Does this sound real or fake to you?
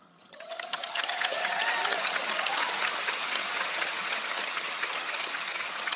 fake